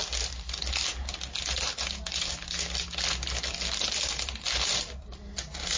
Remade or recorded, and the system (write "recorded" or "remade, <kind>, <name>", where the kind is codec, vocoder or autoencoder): recorded